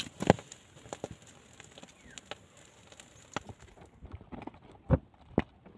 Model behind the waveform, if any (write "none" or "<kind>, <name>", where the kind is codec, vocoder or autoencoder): none